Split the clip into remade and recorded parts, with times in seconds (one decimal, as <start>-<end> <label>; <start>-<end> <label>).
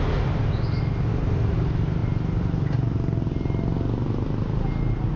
0.0-5.2 recorded